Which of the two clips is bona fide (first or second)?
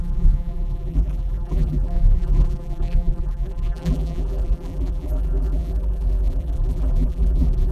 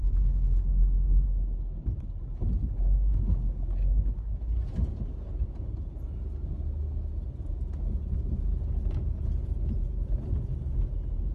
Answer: second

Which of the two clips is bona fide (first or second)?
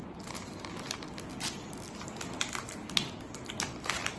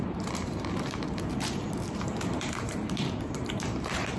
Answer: first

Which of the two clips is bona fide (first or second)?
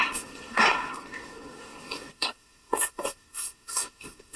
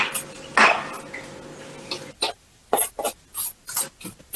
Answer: second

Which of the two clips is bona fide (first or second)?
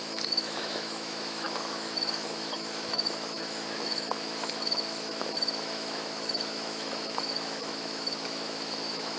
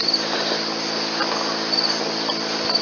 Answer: second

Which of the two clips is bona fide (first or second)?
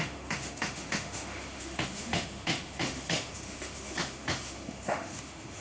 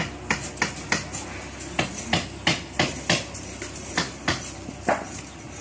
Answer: second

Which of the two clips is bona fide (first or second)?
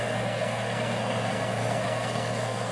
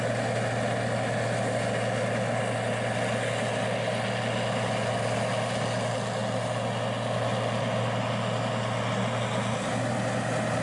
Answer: second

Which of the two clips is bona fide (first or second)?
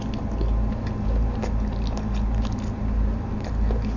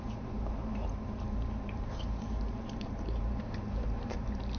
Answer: first